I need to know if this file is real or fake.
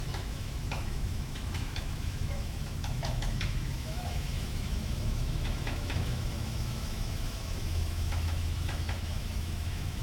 fake